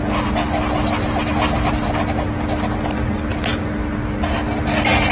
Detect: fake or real real